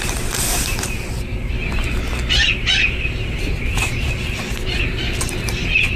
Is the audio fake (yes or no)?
no